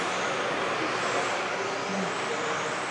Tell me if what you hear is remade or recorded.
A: recorded